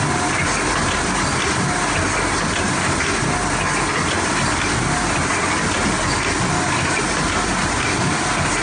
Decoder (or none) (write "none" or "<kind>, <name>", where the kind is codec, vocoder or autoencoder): none